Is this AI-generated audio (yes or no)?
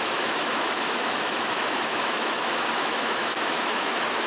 yes